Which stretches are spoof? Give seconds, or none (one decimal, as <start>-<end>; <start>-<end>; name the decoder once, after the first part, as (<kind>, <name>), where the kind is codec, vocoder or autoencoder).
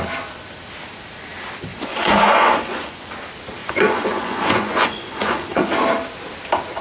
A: 1.7-3.1 (vocoder, Vocos); 3.6-5.7